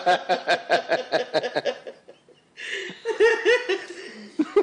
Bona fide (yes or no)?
yes